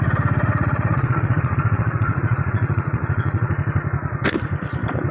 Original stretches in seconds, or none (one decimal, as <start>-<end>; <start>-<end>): 0.0-0.4; 3.5-5.1